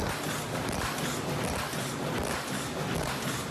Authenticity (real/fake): real